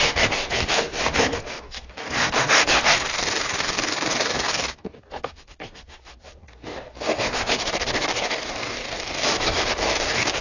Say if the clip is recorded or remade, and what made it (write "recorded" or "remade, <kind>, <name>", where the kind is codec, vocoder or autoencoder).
remade, codec, DAC